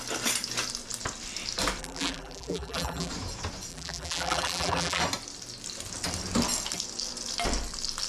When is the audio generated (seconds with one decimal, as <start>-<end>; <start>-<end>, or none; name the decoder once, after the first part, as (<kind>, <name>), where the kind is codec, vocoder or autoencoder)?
1.8-3.1 (vocoder, BigVGAN v2); 3.7-5.0